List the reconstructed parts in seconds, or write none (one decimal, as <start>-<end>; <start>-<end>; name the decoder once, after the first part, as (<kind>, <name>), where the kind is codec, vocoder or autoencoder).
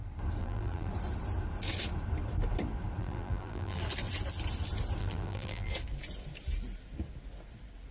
0.4-0.9 (vocoder, BigVGAN v2); 3.0-3.8; 5.0-5.7